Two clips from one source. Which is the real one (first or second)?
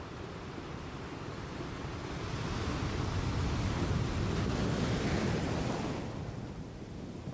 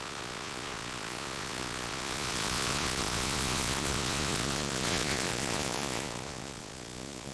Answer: first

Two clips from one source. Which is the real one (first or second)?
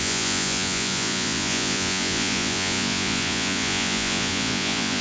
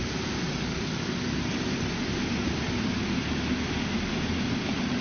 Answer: second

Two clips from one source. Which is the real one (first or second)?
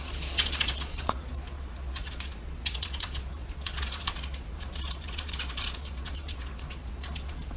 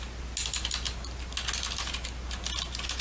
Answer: second